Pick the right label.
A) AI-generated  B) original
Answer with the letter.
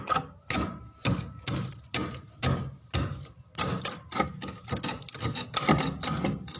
B